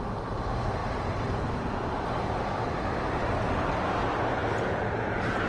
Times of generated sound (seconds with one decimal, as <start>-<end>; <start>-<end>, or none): 0.8-1.8